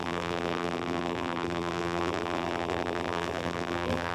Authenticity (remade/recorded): remade